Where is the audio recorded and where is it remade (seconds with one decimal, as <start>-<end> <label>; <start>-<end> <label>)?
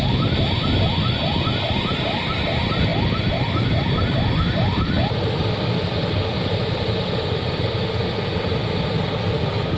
0.0-9.8 recorded